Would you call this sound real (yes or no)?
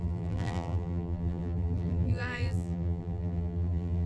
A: no